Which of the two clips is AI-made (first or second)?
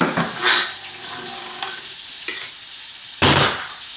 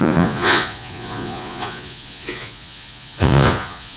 second